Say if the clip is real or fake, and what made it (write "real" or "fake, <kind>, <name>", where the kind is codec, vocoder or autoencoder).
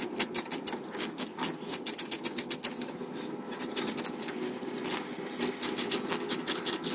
real